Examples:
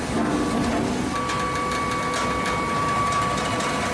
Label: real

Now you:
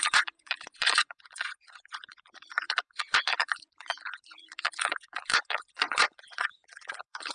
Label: fake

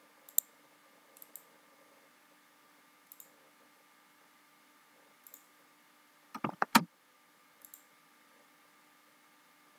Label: real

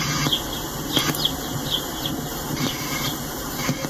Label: real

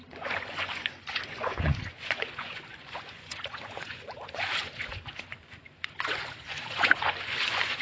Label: fake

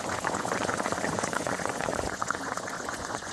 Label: fake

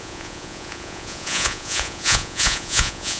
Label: fake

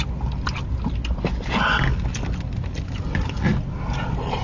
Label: real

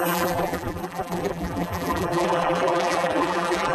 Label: fake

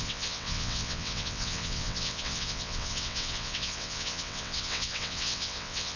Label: fake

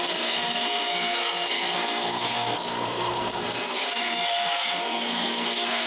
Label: fake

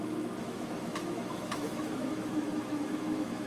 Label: fake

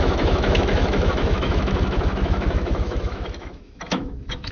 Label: fake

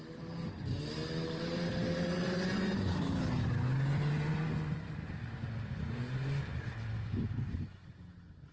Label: real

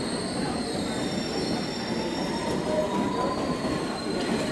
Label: real